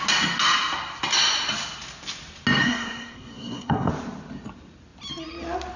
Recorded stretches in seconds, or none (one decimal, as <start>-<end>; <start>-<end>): 0.0-2.6; 3.9-5.8